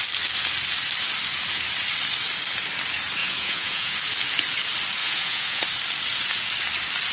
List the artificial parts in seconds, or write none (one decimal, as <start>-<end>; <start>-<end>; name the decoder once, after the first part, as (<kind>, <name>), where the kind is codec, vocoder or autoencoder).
3.2-4.0 (vocoder, Vocos); 5.0-5.6